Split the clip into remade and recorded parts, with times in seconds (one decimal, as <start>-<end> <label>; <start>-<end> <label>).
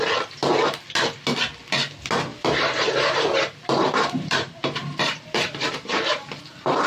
0.0-2.3 recorded; 2.3-6.4 remade; 6.4-6.9 recorded